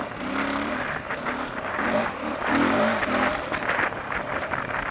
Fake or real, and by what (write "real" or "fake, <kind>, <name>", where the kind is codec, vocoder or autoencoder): real